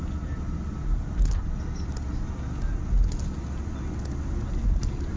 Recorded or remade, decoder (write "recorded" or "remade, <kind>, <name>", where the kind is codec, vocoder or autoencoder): recorded